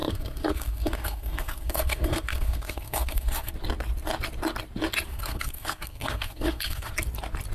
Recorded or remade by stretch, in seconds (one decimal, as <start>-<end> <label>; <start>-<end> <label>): 0.0-3.5 remade; 3.5-5.1 recorded; 5.1-6.9 remade; 6.9-7.5 recorded